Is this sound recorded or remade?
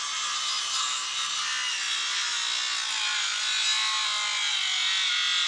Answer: recorded